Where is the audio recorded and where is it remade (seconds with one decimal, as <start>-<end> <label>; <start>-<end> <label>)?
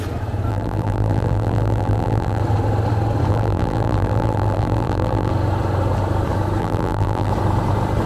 0.0-0.5 recorded; 0.5-2.4 remade; 2.4-3.3 recorded; 3.3-5.3 remade; 5.3-6.6 recorded; 6.6-7.3 remade; 7.3-8.1 recorded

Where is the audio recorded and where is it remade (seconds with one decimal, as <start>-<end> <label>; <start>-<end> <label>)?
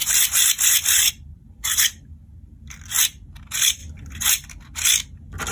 0.0-3.0 remade; 3.0-3.8 recorded; 3.8-4.3 remade; 4.3-5.5 recorded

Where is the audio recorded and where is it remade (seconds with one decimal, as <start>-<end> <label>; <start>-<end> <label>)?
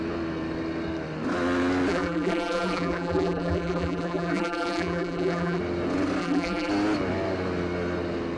0.0-1.9 recorded; 1.9-5.6 remade; 5.6-6.2 recorded; 6.2-6.7 remade; 6.7-8.4 recorded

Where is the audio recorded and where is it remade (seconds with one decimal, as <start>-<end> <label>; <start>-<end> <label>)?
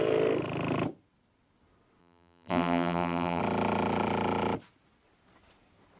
0.0-2.0 recorded; 2.0-3.4 remade; 3.4-6.0 recorded